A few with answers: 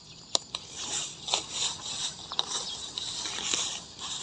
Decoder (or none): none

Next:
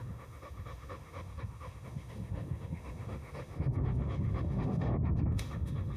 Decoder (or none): autoencoder, DAC-VAE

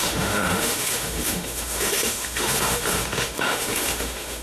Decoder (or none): autoencoder, DAC-VAE